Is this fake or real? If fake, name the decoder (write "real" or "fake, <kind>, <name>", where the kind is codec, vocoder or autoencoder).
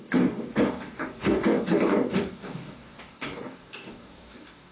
fake, codec, DAC